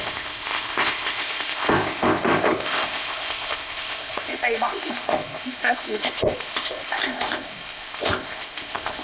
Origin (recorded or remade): remade